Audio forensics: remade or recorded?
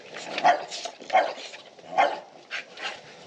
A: recorded